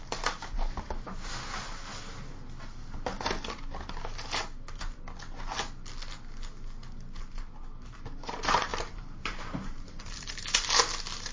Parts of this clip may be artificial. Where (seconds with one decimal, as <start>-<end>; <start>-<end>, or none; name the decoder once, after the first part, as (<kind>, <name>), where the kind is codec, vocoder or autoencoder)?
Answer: 8.7-10.3 (vocoder, BigVGAN v2)